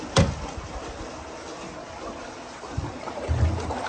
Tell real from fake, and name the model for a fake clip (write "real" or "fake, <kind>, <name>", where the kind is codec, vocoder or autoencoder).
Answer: real